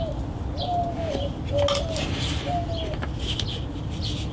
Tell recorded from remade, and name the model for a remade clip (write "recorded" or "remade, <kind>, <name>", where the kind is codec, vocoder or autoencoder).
recorded